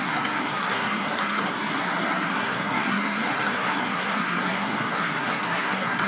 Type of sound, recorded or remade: remade